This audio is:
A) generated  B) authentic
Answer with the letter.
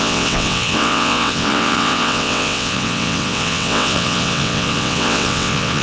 A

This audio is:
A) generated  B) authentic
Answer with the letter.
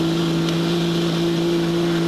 B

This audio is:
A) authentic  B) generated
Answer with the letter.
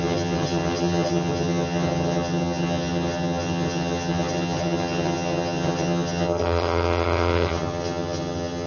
B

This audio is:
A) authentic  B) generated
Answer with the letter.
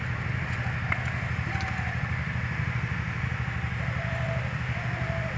A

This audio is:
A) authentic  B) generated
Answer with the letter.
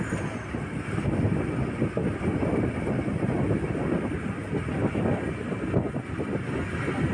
A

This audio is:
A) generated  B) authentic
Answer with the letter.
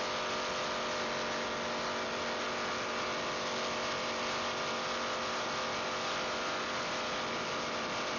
B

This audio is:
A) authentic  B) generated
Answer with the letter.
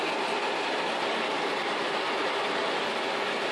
A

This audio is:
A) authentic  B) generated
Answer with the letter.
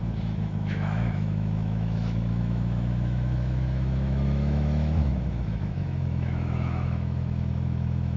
B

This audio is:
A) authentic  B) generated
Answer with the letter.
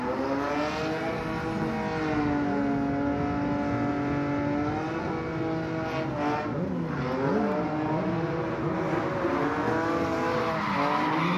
A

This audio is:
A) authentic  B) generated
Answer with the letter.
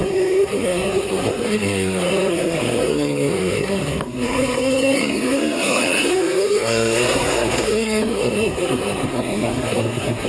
B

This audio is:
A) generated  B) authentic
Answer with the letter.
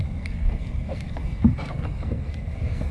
A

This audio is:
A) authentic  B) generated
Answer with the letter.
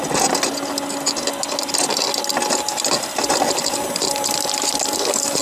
A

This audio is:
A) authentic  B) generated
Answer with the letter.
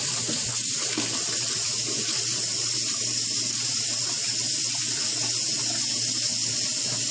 A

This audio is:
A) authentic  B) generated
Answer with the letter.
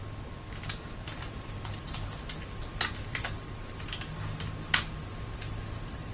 A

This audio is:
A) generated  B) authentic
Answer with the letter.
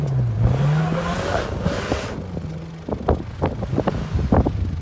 B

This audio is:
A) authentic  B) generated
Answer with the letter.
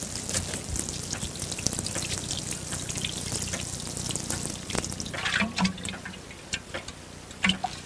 A